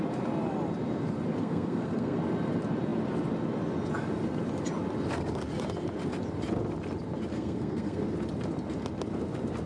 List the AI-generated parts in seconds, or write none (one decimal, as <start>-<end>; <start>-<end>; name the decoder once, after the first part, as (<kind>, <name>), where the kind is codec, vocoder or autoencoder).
1.4-2.2 (codec, SNAC); 7.3-8.0